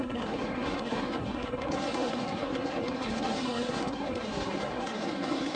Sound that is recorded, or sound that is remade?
remade